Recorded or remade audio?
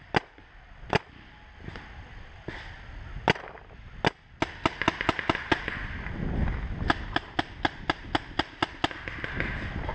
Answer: recorded